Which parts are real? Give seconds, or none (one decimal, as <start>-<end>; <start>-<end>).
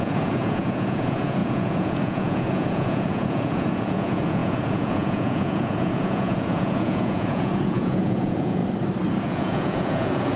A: 8.6-9.2